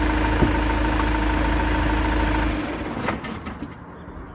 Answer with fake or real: real